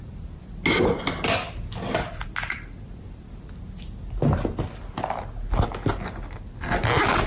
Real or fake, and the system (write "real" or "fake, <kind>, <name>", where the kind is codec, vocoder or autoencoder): real